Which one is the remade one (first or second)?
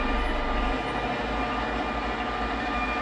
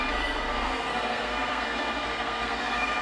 second